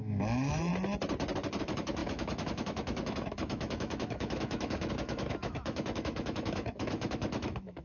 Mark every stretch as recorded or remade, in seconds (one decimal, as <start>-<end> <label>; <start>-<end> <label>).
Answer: 0.0-0.7 remade; 0.7-1.6 recorded; 1.6-7.8 remade